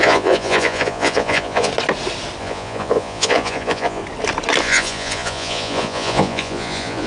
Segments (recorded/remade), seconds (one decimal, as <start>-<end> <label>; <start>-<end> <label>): 0.0-1.7 remade; 1.7-2.4 recorded; 2.4-4.0 remade; 4.0-4.6 recorded; 4.6-7.1 remade